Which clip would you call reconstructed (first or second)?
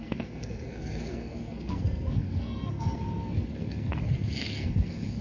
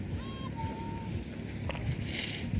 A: first